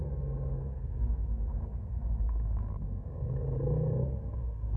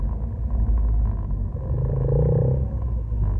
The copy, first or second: first